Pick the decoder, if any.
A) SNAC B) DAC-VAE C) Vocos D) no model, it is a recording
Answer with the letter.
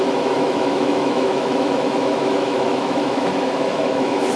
B